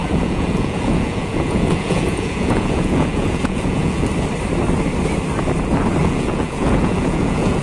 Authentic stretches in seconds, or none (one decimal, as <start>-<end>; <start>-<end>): 4.1-6.0